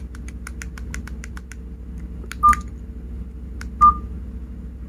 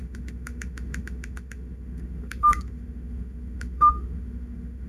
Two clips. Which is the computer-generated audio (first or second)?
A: second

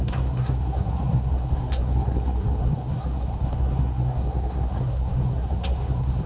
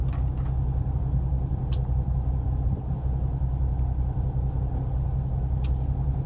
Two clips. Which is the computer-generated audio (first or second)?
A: first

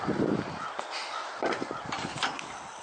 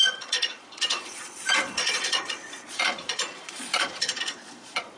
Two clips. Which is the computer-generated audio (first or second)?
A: second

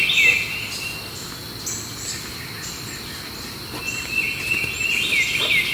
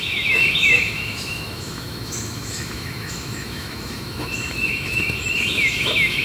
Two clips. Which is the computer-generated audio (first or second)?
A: second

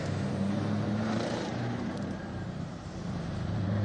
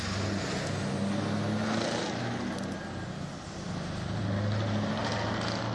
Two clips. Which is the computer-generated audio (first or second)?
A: first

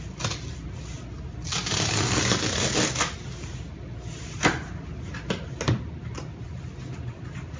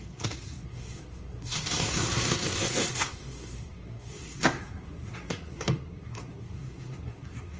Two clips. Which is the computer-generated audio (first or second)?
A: second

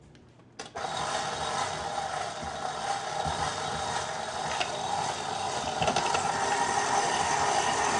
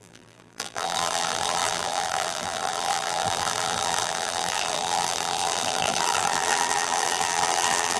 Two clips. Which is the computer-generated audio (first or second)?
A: second